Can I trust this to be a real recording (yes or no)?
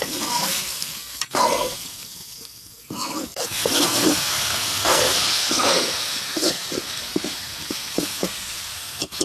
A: no